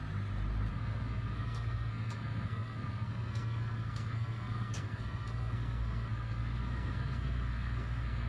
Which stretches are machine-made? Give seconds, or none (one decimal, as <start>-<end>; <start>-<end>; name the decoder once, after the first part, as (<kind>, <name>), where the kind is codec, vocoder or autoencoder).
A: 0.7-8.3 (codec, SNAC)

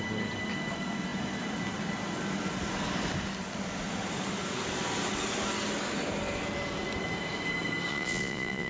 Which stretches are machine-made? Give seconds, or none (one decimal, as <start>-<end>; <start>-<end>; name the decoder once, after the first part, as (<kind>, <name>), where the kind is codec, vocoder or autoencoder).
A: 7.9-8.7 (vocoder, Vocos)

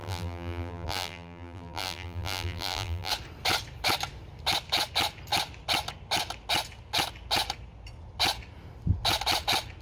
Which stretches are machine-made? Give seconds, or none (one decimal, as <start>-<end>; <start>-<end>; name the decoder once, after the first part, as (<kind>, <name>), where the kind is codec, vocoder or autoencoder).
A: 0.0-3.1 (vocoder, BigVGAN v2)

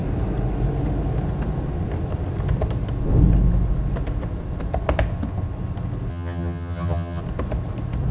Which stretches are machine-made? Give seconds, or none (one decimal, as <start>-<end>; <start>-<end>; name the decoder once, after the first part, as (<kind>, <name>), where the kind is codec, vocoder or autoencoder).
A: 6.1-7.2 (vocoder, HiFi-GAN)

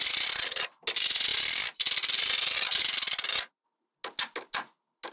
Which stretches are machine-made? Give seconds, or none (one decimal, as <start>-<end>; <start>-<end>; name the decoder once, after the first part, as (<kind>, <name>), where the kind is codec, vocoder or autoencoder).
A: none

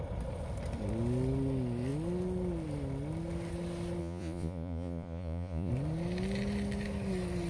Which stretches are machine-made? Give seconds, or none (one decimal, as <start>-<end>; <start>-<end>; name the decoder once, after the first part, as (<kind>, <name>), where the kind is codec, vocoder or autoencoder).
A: 4.0-5.7 (vocoder, Vocos)

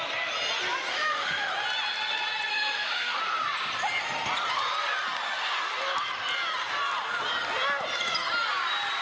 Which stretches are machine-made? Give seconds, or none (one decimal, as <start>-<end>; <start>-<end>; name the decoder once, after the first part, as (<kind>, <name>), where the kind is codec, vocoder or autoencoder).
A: 0.9-1.5 (autoencoder, DAC-VAE); 2.5-3.2